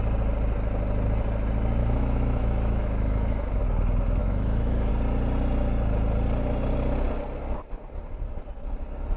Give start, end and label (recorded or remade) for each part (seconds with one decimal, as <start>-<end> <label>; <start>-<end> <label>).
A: 0.0-1.8 recorded; 1.8-3.6 remade; 3.6-4.2 recorded; 4.2-4.9 remade; 4.9-9.2 recorded